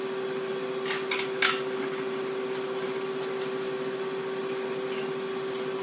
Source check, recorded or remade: recorded